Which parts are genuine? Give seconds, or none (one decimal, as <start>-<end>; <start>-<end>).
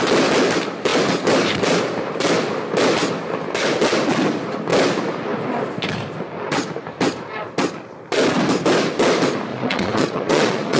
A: 0.0-9.5